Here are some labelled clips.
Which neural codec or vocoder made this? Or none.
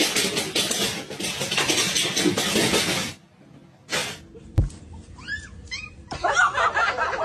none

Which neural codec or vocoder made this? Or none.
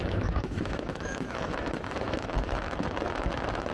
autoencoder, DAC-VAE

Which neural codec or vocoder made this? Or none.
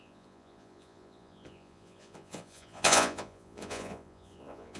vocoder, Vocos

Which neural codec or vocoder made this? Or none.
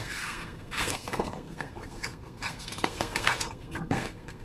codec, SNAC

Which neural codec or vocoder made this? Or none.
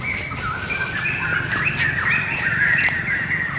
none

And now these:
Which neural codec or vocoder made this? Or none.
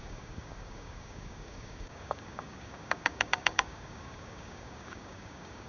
codec, DAC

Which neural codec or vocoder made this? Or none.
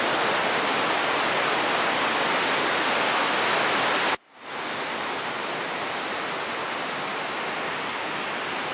none